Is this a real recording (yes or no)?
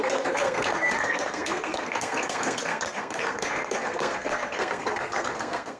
no